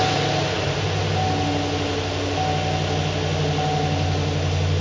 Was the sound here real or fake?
real